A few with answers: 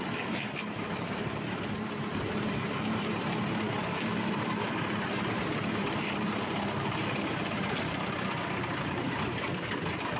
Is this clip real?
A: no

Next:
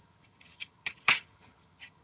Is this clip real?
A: no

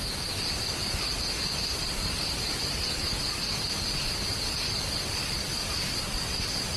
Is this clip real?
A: yes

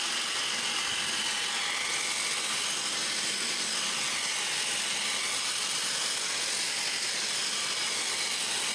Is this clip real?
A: yes